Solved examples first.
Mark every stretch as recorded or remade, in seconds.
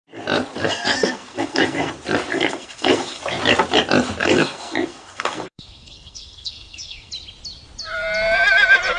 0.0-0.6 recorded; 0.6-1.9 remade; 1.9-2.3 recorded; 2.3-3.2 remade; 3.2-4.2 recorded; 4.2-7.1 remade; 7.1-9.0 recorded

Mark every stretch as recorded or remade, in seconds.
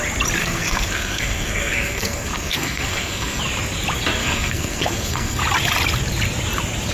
0.0-0.4 recorded; 0.4-3.4 remade; 3.4-4.2 recorded; 4.2-5.4 remade; 5.4-6.9 recorded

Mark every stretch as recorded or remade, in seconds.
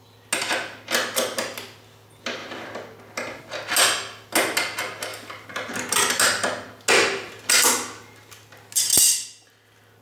0.0-10.0 recorded